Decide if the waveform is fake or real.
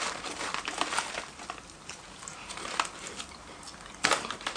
real